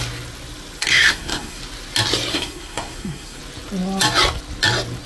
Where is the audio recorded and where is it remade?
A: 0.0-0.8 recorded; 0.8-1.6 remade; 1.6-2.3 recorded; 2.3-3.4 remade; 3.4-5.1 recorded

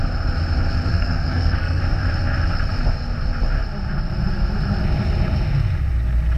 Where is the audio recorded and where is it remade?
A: 0.0-0.9 recorded; 0.9-1.8 remade; 1.8-6.4 recorded

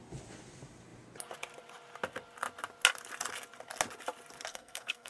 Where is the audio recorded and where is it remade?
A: 0.0-4.5 recorded; 4.5-5.1 remade